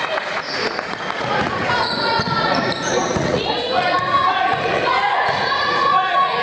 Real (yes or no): no